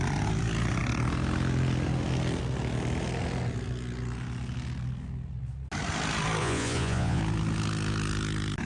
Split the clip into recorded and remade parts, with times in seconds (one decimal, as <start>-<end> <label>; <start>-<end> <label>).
0.0-6.4 recorded; 6.4-7.2 remade; 7.2-8.7 recorded